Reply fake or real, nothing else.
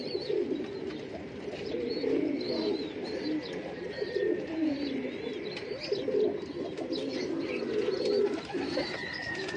fake